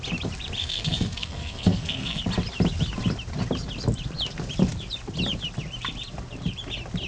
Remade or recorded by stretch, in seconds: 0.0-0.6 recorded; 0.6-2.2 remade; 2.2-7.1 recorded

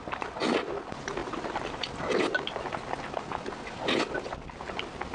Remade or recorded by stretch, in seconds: 0.0-5.1 recorded

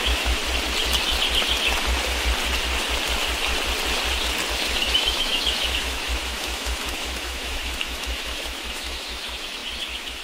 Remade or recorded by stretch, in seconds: 0.0-0.4 remade; 0.4-4.5 recorded; 4.5-10.2 remade

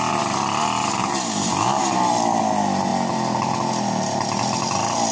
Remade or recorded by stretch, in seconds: 0.0-1.0 recorded; 1.0-2.1 remade; 2.1-5.1 recorded

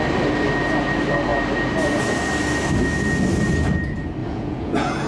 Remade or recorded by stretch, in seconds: 0.0-4.2 recorded; 4.2-5.1 remade

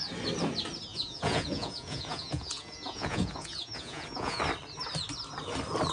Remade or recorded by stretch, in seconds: 0.0-0.9 recorded; 0.9-4.4 remade; 4.4-5.9 recorded

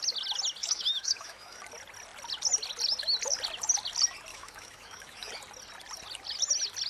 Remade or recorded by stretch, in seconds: 0.0-0.6 recorded; 0.6-1.6 remade; 1.6-4.3 recorded; 4.3-5.3 remade; 5.3-6.9 recorded

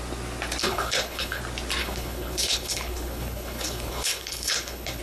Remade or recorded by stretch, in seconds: 0.0-0.6 recorded; 0.6-1.4 remade; 1.4-1.8 recorded; 1.8-5.0 remade